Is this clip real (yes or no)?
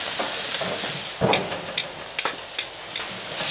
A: yes